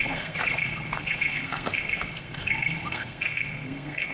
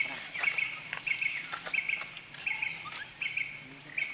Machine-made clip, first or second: first